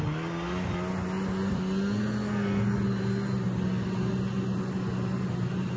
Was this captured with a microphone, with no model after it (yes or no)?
yes